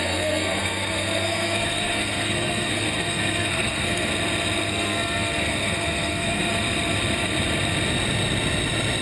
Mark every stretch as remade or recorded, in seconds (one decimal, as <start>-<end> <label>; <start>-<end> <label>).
0.0-4.1 remade; 4.1-4.7 recorded; 4.7-6.5 remade; 6.5-9.0 recorded